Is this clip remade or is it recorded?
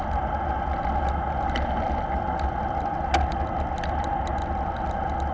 recorded